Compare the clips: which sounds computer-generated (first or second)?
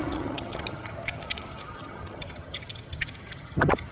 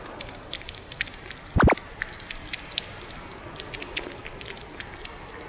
first